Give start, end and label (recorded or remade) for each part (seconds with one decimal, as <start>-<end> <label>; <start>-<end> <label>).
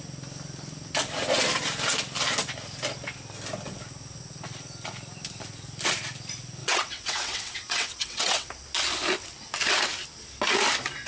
0.0-6.6 recorded; 6.6-8.5 remade; 8.5-11.1 recorded